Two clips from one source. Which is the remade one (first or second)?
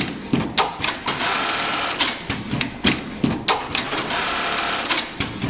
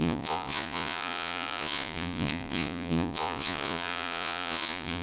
second